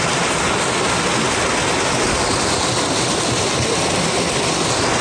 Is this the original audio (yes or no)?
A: yes